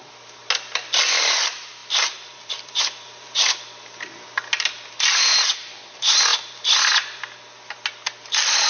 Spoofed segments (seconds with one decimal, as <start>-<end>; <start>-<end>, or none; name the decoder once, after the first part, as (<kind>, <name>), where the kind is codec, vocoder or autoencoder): 1.8-3.7 (vocoder, BigVGAN v2)